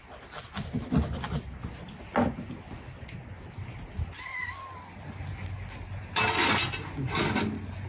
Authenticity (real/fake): real